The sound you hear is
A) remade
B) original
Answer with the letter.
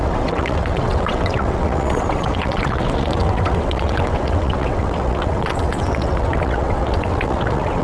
A